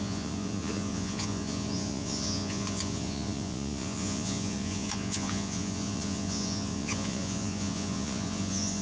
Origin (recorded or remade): remade